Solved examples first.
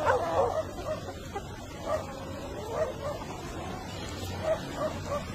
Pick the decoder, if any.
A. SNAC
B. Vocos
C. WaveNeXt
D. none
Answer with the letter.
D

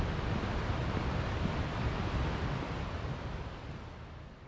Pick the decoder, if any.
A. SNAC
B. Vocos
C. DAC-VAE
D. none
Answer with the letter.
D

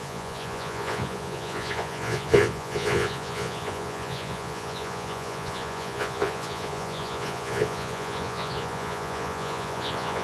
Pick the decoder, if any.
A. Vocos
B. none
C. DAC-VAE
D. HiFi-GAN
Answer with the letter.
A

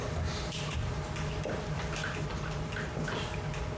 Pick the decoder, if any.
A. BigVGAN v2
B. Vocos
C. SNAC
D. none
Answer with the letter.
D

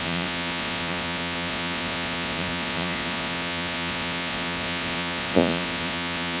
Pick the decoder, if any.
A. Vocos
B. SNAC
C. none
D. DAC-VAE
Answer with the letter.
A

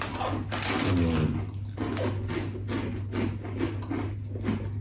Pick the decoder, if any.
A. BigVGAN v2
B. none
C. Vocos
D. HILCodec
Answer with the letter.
B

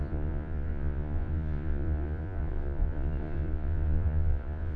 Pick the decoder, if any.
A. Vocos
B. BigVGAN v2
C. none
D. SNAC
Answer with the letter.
A